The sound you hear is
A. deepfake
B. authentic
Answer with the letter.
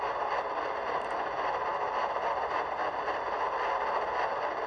B